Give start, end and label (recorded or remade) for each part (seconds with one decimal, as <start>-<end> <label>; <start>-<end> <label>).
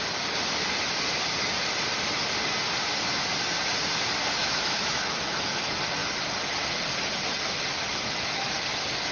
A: 0.0-4.4 recorded; 4.4-5.6 remade; 5.6-7.9 recorded; 7.9-8.5 remade; 8.5-9.1 recorded